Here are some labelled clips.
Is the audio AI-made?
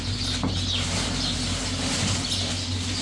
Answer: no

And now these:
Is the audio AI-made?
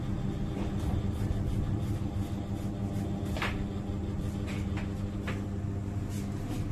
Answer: no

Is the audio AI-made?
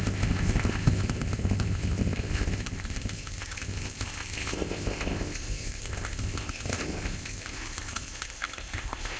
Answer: yes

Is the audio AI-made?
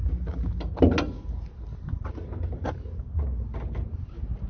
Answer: no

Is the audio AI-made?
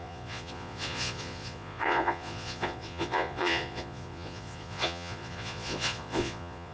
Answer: yes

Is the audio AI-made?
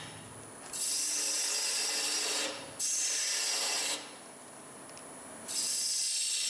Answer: no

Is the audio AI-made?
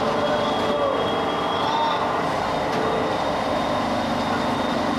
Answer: no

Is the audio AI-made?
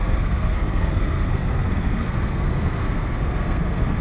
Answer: yes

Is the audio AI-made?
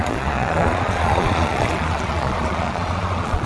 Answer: yes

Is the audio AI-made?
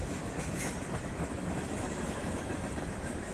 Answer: yes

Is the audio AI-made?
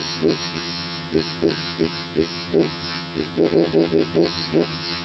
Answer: yes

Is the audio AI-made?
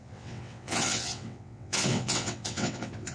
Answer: yes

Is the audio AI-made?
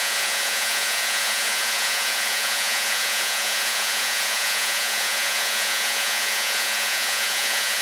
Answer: yes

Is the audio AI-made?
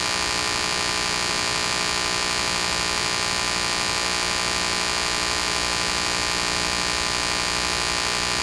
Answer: no